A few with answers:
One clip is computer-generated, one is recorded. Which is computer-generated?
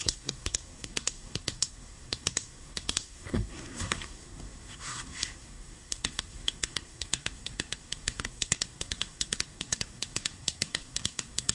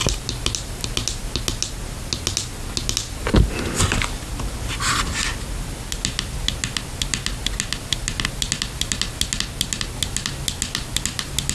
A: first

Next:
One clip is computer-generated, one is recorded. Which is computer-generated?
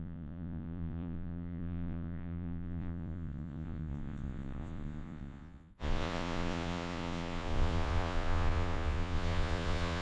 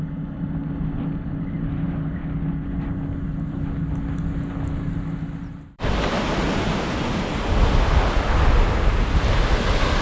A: first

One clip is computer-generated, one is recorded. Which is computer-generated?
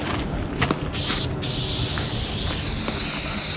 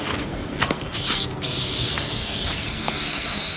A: second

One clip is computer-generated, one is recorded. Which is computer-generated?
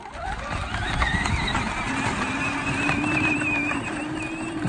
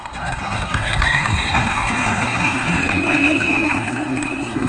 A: second